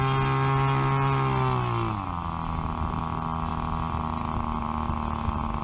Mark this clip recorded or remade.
recorded